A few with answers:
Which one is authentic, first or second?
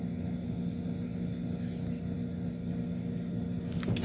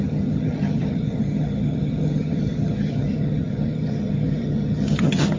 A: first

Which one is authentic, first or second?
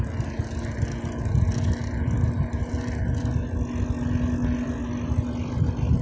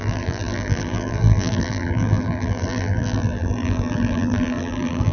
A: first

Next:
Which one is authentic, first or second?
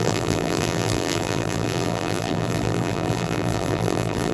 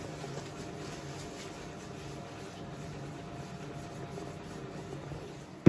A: second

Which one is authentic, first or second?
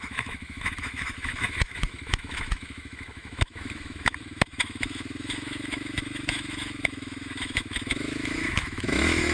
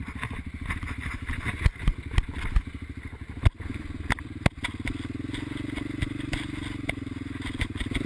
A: second